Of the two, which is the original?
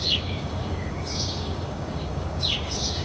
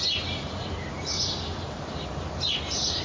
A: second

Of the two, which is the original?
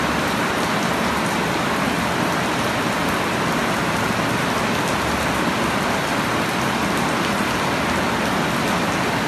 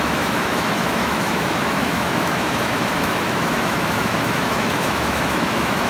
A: first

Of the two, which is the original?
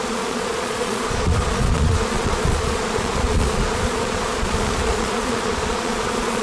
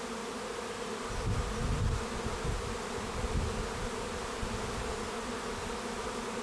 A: second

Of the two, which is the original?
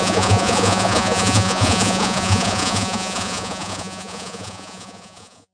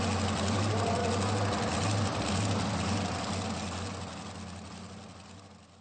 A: second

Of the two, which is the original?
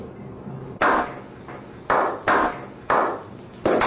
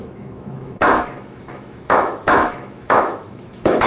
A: first